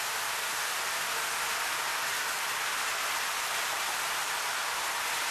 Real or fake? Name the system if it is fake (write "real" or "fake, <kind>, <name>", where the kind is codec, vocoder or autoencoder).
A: real